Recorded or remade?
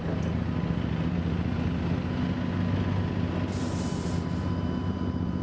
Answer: recorded